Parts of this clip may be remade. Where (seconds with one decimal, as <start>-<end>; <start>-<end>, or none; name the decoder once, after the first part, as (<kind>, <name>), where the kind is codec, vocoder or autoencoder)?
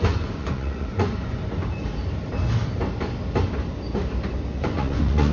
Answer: 0.0-1.4 (vocoder, Vocos); 4.6-5.3